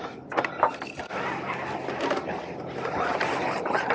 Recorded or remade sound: recorded